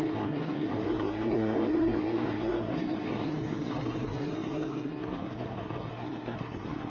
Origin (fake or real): fake